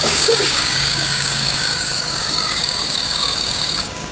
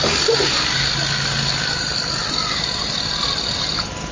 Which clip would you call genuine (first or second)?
second